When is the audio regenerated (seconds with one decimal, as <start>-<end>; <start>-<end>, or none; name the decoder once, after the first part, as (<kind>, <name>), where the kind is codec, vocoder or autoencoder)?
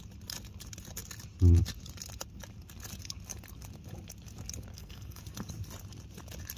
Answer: 4.7-5.2 (codec, SNAC)